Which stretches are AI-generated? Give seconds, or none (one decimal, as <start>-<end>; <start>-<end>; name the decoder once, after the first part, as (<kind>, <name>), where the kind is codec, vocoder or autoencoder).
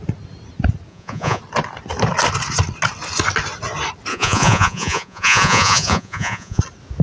0.9-1.4 (vocoder, Vocos); 4.1-6.6